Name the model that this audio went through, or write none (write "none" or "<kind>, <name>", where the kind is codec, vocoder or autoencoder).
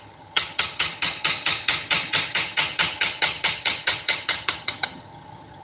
vocoder, HiFi-GAN